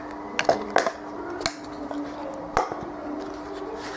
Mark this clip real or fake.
real